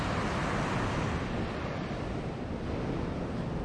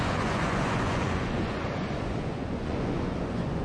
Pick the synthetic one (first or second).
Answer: second